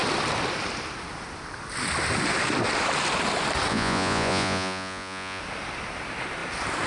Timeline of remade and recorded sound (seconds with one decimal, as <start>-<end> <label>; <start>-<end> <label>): 0.0-3.7 recorded; 3.7-5.4 remade; 5.4-6.9 recorded